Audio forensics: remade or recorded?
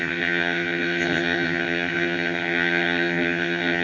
remade